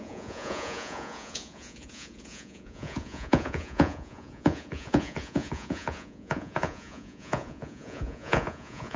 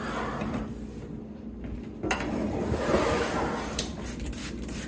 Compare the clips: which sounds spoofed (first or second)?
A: first